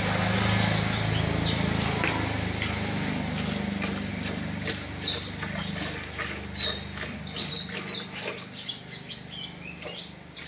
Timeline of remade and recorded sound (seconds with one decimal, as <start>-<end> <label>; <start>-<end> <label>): 0.0-10.5 recorded